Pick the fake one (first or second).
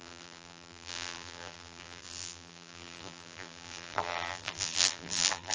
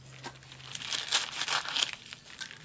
first